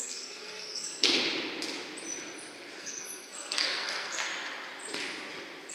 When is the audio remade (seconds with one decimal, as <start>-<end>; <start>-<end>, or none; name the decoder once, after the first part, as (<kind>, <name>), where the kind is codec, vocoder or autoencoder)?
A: 0.0-1.2 (codec, SNAC); 2.8-4.3